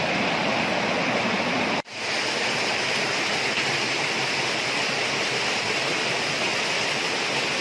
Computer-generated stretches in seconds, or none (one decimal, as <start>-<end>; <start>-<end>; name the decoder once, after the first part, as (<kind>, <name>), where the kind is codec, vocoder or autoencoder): none